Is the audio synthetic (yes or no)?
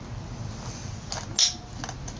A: no